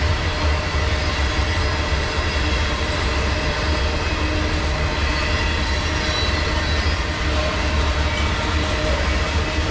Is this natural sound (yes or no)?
yes